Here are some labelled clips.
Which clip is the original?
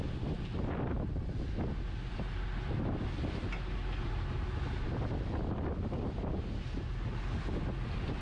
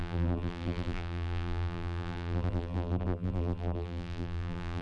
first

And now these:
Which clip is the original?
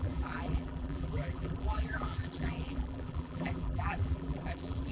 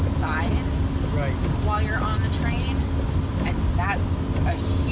second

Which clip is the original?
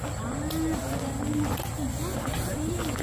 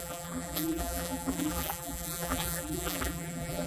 first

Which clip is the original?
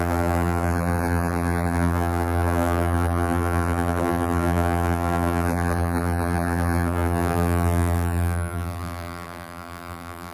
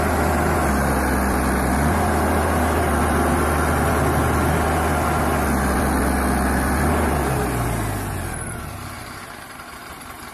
second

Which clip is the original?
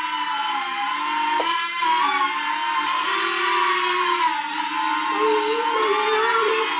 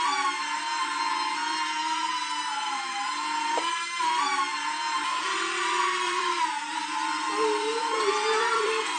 first